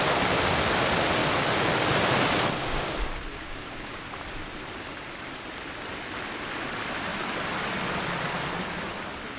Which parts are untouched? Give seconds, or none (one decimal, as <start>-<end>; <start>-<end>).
0.0-3.3; 4.0-9.4